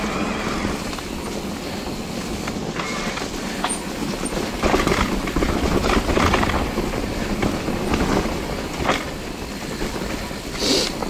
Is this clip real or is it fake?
real